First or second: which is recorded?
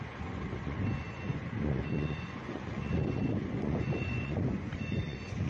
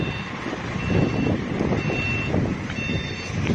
second